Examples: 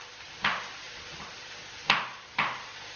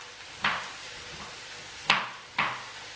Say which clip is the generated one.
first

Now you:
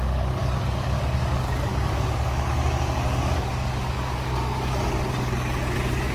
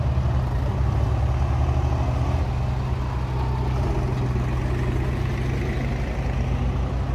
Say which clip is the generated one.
first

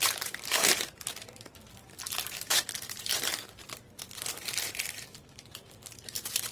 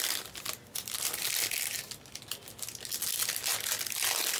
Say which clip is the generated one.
first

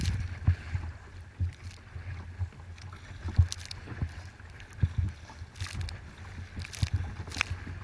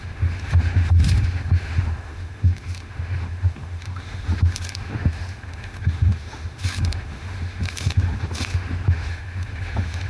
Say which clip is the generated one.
second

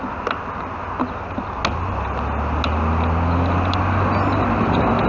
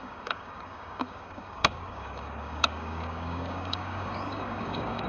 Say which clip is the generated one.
second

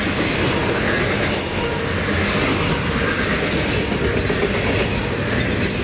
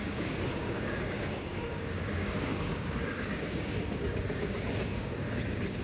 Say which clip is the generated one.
second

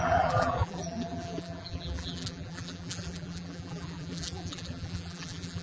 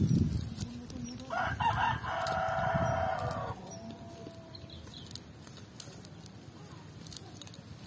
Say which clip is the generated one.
first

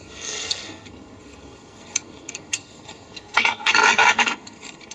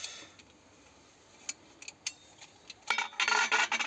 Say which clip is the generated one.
first